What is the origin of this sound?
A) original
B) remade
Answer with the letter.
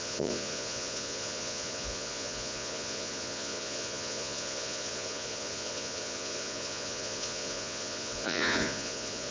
B